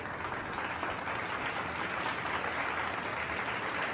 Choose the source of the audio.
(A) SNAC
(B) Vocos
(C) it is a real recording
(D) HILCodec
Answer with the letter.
C